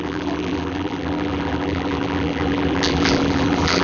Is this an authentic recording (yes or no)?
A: no